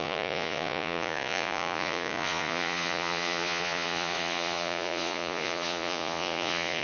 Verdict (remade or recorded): remade